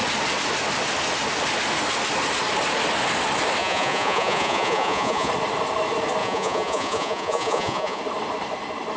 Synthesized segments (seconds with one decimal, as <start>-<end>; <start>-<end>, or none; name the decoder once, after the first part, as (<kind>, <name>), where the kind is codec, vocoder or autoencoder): 3.6-5.3 (vocoder, Vocos); 6.2-8.0